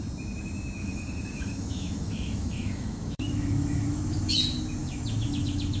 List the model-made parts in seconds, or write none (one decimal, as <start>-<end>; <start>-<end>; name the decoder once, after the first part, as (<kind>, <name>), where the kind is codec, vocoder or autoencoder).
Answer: 0.8-4.3 (autoencoder, DAC-VAE); 4.8-5.8